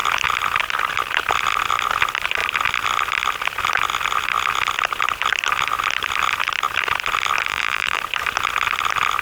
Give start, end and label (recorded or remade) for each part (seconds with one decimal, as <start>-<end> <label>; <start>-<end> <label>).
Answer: 0.0-7.5 recorded; 7.5-8.0 remade; 8.0-9.2 recorded

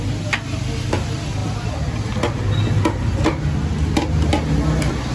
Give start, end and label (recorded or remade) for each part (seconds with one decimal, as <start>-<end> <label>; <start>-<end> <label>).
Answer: 0.0-5.1 recorded

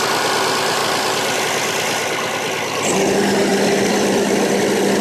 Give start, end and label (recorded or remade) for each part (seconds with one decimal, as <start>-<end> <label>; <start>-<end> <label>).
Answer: 0.0-0.8 recorded; 0.8-1.4 remade; 1.4-3.5 recorded; 3.5-4.5 remade; 4.5-5.0 recorded

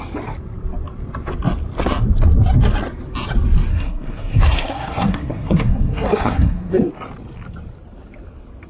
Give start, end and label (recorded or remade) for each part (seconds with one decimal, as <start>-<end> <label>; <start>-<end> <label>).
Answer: 0.0-3.7 recorded; 3.7-6.9 remade; 6.9-8.7 recorded

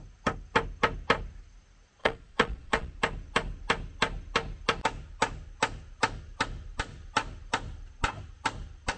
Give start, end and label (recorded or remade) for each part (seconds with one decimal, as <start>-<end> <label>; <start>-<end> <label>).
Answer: 0.0-2.0 recorded; 2.0-2.9 remade; 2.9-9.0 recorded

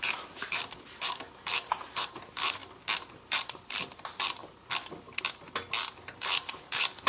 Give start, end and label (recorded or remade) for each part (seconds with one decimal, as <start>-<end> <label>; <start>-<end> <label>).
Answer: 0.0-2.6 remade; 2.6-3.1 recorded; 3.1-4.4 remade; 4.4-6.0 recorded; 6.0-7.1 remade

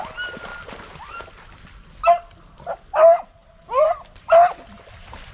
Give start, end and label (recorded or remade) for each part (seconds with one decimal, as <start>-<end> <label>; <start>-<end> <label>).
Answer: 0.0-3.4 recorded; 3.4-5.3 remade

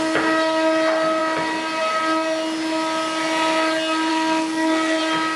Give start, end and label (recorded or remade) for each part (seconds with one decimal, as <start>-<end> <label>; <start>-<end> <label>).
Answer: 0.0-4.1 recorded; 4.1-5.0 remade; 5.0-5.4 recorded